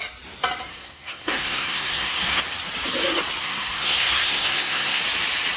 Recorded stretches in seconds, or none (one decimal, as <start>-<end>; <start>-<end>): 0.0-0.7; 2.4-3.4; 5.0-5.6